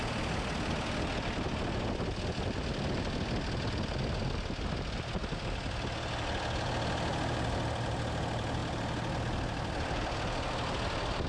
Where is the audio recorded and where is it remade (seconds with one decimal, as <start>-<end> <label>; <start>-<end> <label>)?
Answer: 0.0-11.3 recorded